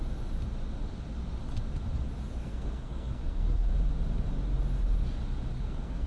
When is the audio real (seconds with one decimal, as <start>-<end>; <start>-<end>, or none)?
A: 0.0-2.4; 3.7-5.5